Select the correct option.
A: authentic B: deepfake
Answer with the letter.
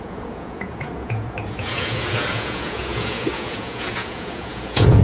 B